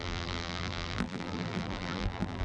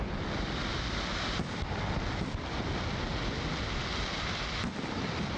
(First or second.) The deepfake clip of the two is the first